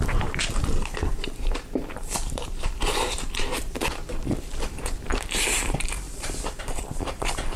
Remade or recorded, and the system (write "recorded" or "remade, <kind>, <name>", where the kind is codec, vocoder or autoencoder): remade, vocoder, BigVGAN v2